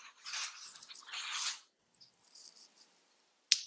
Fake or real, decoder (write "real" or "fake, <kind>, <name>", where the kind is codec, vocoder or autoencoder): real